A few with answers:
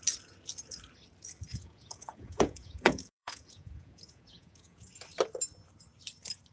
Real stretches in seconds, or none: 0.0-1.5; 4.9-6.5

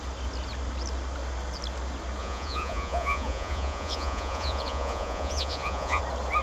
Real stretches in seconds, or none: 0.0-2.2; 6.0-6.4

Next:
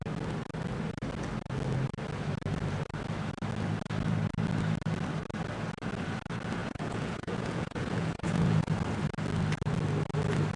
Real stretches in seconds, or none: 0.0-6.6; 8.7-10.6